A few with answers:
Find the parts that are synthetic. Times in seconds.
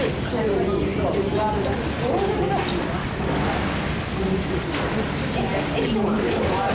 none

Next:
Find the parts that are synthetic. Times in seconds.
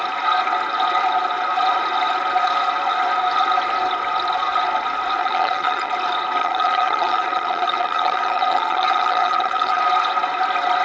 5.2-5.9 (vocoder, HiFi-GAN); 6.4-9.8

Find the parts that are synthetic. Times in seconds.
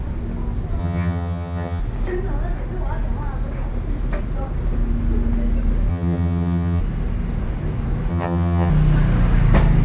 0.8-1.8 (vocoder, HiFi-GAN); 5.9-6.8; 8.1-8.7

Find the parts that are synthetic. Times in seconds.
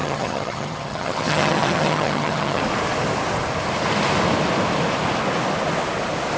0.0-2.6 (vocoder, HiFi-GAN)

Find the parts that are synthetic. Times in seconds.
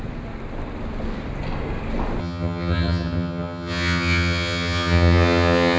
2.2-5.8 (vocoder, HiFi-GAN)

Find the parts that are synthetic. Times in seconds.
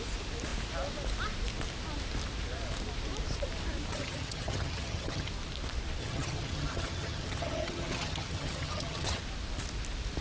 3.9-5.3 (vocoder, HiFi-GAN); 6.0-9.2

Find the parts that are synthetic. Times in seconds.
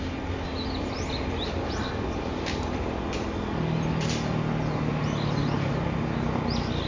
none